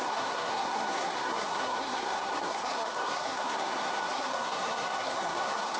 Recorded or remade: remade